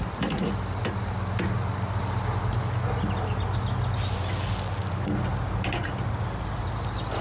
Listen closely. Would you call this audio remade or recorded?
recorded